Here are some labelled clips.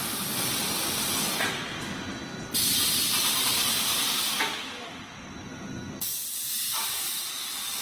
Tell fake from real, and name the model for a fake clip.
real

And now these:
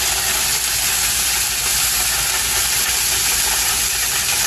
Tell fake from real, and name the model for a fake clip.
real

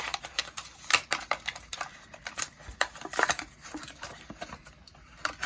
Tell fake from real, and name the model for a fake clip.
fake, vocoder, BigVGAN v2